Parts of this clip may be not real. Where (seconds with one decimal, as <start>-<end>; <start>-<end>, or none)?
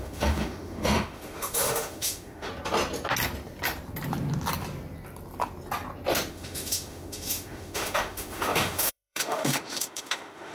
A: 0.0-2.5; 6.3-10.5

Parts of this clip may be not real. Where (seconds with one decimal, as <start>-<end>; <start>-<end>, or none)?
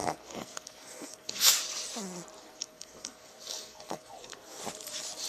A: 0.0-1.5; 2.4-4.6